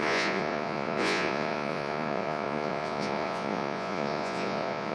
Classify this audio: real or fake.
fake